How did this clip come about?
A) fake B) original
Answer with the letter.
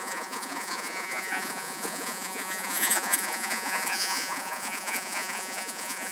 A